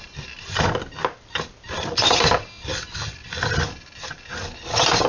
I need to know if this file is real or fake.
real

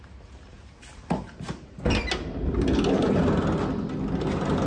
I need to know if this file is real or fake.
real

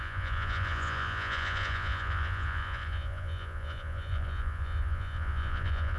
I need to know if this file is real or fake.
fake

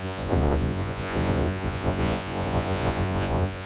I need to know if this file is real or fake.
fake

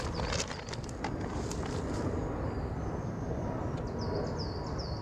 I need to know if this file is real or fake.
fake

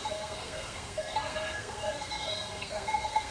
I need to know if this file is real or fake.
fake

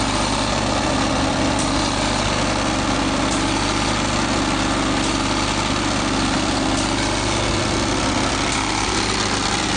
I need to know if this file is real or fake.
real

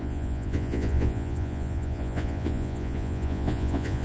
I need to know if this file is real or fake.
fake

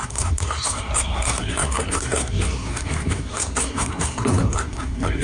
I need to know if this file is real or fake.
fake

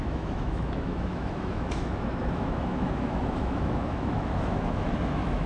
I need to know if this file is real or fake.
fake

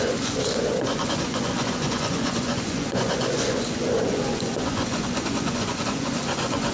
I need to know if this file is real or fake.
fake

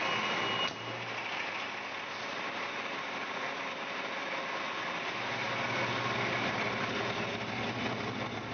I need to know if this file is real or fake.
real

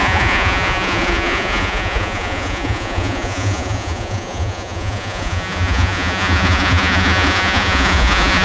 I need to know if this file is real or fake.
fake